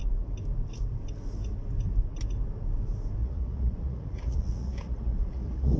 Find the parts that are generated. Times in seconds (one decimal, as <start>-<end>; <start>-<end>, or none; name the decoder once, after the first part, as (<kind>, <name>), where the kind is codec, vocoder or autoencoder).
3.2-5.8 (vocoder, Vocos)

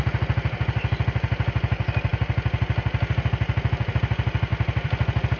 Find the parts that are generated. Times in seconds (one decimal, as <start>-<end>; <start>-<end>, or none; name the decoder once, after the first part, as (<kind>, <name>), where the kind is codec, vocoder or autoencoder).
none

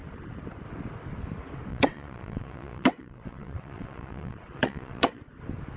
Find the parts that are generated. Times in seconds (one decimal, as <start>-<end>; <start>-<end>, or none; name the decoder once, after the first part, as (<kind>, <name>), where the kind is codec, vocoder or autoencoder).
1.7-5.2 (vocoder, WaveNeXt)

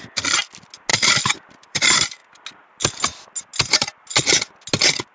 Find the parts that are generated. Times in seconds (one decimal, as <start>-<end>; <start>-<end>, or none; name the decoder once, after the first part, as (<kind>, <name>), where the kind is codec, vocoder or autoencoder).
0.9-1.8 (vocoder, BigVGAN v2)

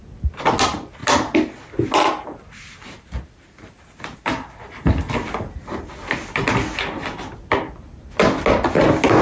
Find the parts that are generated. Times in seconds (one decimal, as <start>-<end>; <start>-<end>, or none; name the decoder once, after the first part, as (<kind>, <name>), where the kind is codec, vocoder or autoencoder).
none

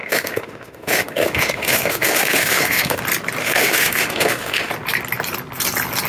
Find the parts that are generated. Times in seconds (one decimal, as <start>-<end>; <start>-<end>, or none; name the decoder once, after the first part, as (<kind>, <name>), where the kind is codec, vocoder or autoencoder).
0.0-3.0 (autoencoder, DAC-VAE); 3.4-4.7

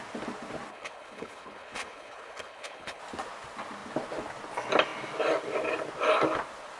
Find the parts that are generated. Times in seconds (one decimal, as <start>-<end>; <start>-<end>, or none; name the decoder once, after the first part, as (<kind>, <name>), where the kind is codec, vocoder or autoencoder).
0.7-3.0 (codec, HILCodec)